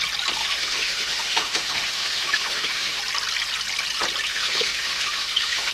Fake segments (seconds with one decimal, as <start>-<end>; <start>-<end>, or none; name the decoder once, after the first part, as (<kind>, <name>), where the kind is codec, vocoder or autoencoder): 0.4-3.0 (autoencoder, DAC-VAE); 4.3-5.7